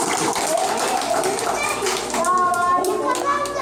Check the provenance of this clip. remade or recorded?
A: recorded